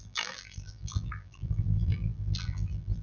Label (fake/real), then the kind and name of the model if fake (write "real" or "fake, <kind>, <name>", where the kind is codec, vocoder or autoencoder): fake, vocoder, BigVGAN v2